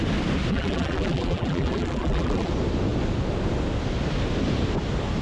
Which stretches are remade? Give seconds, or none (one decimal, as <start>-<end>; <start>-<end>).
0.5-2.5

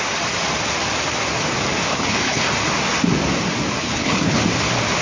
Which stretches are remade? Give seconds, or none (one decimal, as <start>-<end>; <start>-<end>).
1.9-2.5; 3.8-4.4

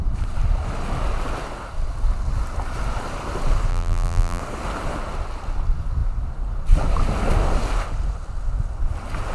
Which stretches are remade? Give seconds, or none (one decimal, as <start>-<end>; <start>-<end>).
3.7-4.4